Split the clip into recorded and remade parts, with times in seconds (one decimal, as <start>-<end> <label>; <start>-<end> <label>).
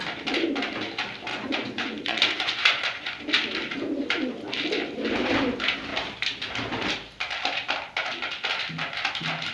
0.0-1.3 recorded; 1.3-3.2 remade; 3.2-9.5 recorded